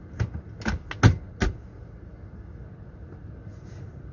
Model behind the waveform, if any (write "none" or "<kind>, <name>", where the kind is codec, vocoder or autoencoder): none